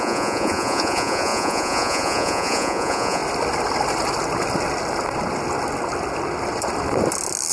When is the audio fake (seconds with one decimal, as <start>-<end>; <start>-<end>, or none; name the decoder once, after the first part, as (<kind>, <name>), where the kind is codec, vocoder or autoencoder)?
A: 0.0-3.2 (vocoder, Vocos)